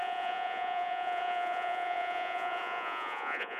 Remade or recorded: remade